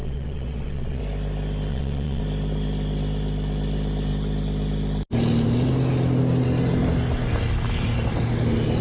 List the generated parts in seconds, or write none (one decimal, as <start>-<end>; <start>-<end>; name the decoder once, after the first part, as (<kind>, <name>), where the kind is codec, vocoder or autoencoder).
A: 0.0-1.0 (vocoder, WaveNeXt); 1.7-2.2